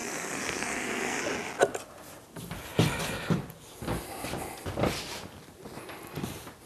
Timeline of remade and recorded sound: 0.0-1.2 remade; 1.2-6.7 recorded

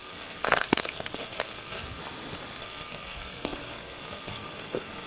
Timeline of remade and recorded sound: 0.0-2.0 remade; 2.0-2.6 recorded; 2.6-5.1 remade

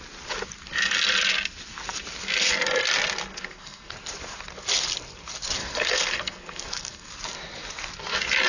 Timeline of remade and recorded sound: 0.0-3.3 recorded; 3.3-3.9 remade; 3.9-5.6 recorded; 5.6-7.1 remade; 7.1-8.5 recorded

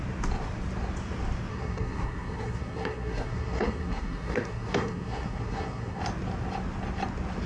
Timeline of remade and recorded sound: 0.0-1.5 recorded; 1.5-6.0 remade; 6.0-7.5 recorded

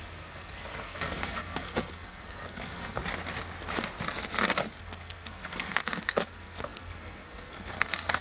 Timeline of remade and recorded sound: 0.0-3.0 remade; 3.0-4.8 recorded; 4.8-8.2 remade